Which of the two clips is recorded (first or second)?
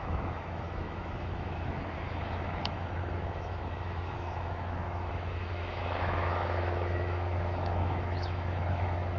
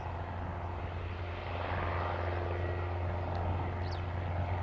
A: second